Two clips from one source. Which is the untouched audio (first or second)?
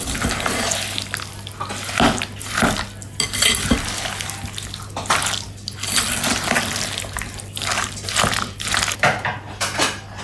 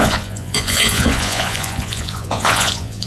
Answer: first